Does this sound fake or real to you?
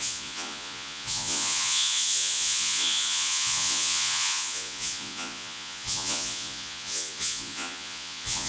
fake